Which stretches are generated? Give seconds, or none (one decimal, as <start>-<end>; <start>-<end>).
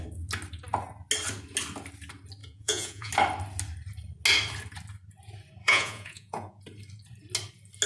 2.4-3.1; 5.6-6.6